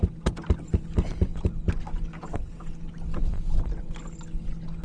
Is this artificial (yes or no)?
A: no